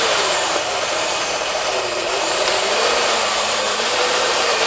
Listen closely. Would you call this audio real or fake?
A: fake